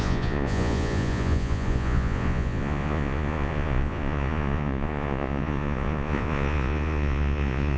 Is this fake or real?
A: fake